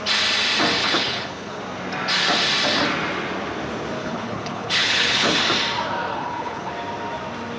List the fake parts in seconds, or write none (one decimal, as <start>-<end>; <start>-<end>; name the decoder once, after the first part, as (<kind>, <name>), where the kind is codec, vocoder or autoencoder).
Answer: 0.8-1.6 (codec, HILCodec); 4.0-5.4; 6.1-6.7